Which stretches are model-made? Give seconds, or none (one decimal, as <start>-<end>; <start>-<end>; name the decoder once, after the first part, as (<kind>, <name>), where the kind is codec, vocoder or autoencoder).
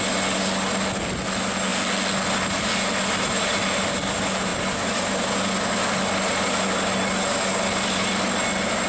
4.5-5.3 (vocoder, BigVGAN v2)